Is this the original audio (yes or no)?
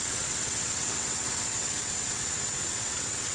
no